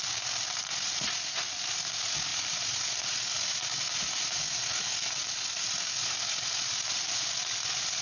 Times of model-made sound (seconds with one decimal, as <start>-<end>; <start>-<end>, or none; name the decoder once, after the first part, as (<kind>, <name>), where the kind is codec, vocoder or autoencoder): none